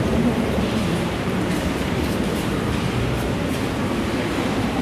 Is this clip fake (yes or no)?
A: yes